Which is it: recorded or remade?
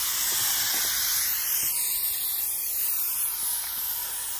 recorded